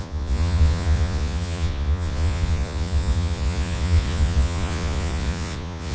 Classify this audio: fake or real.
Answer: fake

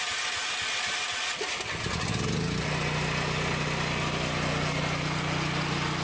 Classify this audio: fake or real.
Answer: real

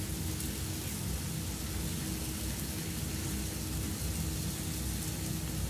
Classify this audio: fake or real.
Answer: real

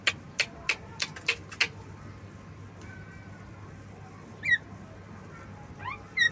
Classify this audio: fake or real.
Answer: real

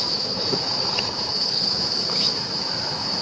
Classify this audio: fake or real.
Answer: fake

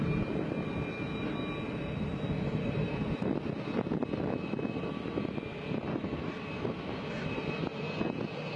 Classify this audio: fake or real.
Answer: real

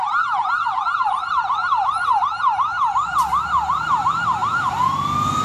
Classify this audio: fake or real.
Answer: real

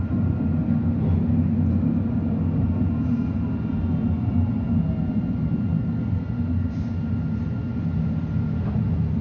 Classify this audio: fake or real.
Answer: real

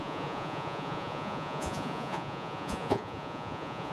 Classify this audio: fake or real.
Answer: fake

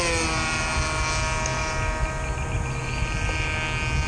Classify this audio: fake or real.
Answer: real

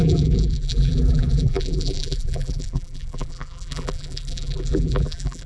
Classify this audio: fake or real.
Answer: fake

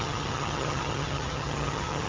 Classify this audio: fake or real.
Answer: fake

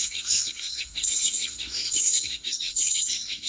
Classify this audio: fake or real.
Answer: fake